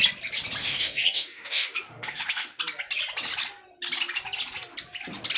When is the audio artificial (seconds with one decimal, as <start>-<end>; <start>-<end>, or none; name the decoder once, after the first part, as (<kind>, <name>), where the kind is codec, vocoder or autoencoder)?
0.6-2.6 (autoencoder, DAC-VAE)